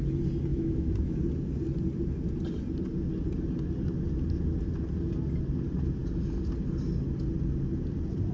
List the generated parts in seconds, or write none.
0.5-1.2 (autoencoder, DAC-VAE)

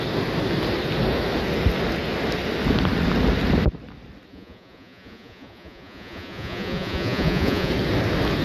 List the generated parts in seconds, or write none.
4.3-7.7 (vocoder, Vocos)

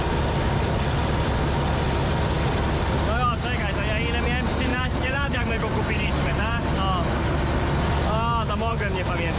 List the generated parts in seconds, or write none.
4.7-6.7 (vocoder, BigVGAN v2)

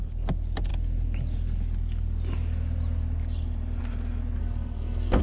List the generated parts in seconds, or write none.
4.4-5.2 (codec, SNAC)

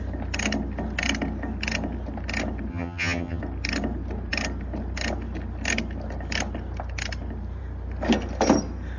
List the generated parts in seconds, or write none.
2.7-3.4 (vocoder, HiFi-GAN)

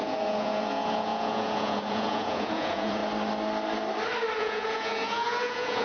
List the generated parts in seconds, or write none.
0.0-3.0 (vocoder, Vocos); 4.4-5.8

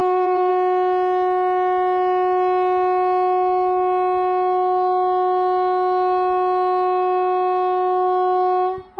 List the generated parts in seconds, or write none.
0.0-0.5 (vocoder, BigVGAN v2)

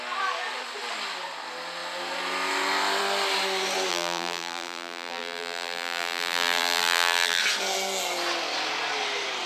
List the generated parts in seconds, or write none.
3.9-7.4 (vocoder, BigVGAN v2)